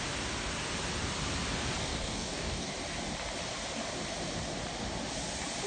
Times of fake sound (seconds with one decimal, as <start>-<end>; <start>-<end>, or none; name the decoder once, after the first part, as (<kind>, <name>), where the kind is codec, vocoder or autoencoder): 1.9-2.7 (codec, DAC)